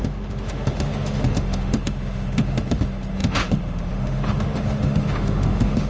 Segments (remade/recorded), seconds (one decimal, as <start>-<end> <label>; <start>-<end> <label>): 0.0-5.9 remade